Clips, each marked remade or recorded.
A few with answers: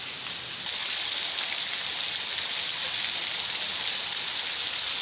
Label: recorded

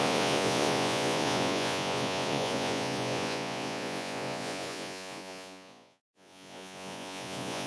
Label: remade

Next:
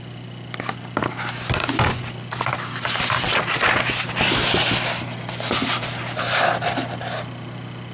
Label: recorded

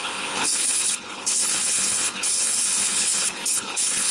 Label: remade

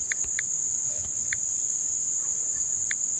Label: recorded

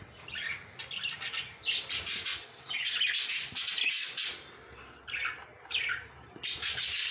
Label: recorded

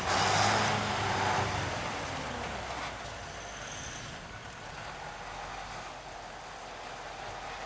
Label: recorded